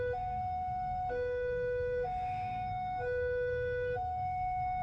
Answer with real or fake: fake